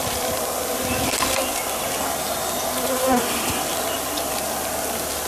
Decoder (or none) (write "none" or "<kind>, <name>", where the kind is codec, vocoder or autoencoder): none